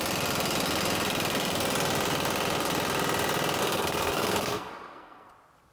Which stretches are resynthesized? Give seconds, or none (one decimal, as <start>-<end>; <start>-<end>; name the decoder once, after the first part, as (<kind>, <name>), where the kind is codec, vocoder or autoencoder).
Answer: 3.6-5.3 (codec, SNAC)